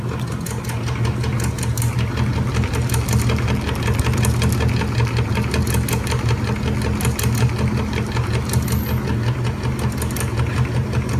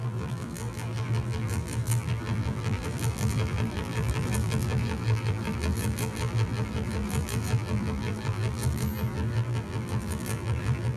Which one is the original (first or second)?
first